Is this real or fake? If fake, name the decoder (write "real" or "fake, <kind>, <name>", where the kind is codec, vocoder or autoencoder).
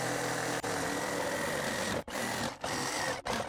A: real